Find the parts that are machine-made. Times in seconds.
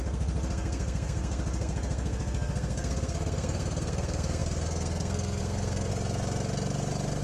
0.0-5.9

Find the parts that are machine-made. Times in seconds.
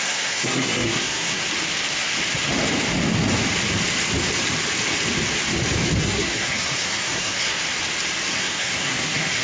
0.0-1.4; 6.0-7.6; 8.3-9.4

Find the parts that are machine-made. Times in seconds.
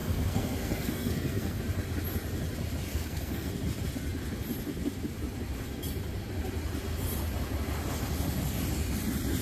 0.0-1.6; 2.9-3.5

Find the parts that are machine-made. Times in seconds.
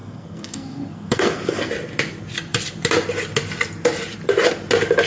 0.0-1.7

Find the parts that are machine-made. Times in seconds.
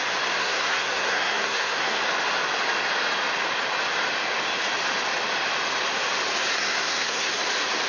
0.4-2.0; 6.5-7.3